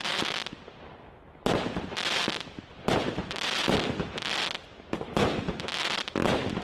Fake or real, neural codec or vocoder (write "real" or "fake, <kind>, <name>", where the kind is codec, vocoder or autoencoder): real